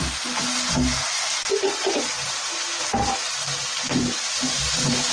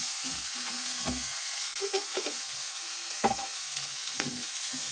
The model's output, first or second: second